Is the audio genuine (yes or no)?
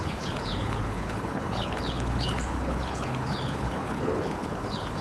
no